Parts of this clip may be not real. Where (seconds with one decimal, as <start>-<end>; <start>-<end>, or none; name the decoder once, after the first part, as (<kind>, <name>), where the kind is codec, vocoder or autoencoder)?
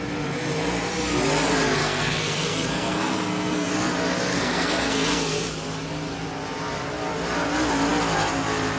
1.8-3.7 (codec, SNAC); 4.3-5.5